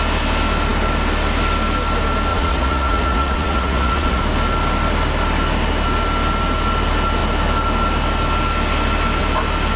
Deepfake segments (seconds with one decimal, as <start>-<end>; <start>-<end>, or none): 2.3-4.2